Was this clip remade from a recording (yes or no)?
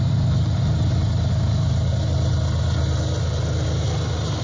no